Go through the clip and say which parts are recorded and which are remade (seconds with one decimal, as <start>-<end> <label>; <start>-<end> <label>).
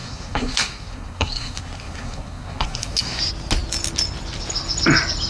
0.0-3.2 remade; 3.2-5.3 recorded